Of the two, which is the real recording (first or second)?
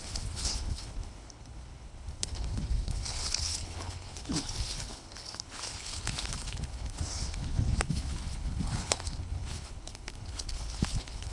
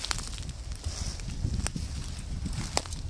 second